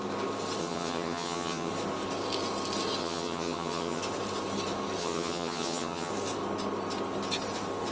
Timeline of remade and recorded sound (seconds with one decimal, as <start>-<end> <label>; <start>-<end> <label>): 0.0-0.6 recorded; 0.6-1.7 remade; 1.7-3.0 recorded; 3.0-4.0 remade; 4.0-5.0 recorded; 5.0-6.1 remade; 6.1-7.9 recorded